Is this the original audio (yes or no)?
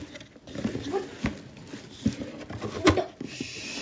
yes